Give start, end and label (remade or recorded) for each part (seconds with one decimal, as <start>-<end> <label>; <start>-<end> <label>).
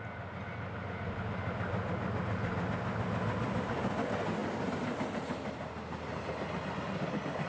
0.0-7.5 recorded